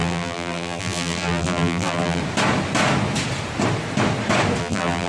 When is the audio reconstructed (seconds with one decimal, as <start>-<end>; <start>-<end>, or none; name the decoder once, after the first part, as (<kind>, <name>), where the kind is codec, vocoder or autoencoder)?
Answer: 0.0-2.2 (vocoder, BigVGAN v2); 4.6-5.1